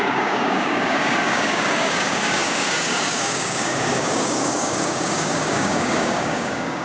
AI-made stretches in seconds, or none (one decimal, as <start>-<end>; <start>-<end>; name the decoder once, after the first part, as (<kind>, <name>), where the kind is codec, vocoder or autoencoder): 0.0-6.8 (codec, DAC)

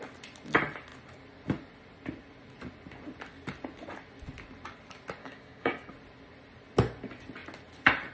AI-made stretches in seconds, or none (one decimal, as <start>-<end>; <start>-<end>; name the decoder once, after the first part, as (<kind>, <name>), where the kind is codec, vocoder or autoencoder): 5.2-5.9 (codec, DAC)

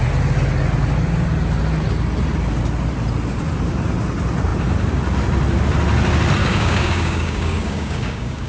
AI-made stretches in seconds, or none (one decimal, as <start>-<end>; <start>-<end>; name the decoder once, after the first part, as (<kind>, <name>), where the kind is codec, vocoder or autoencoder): 6.4-8.5 (codec, DAC)

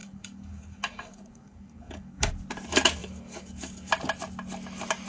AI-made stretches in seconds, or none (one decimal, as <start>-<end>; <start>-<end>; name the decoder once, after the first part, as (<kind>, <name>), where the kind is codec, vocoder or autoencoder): 0.0-2.3 (codec, DAC); 3.0-3.9

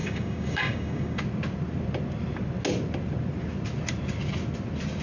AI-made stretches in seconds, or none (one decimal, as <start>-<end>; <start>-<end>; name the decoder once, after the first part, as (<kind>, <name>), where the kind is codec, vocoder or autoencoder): 0.0-1.2 (codec, DAC)